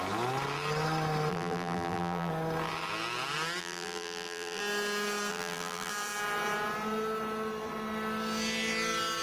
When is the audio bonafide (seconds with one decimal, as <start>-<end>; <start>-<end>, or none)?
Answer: 0.0-1.3; 2.3-3.6; 4.6-5.3; 5.9-9.2